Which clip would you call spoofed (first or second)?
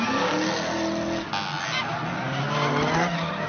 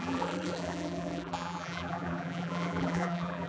second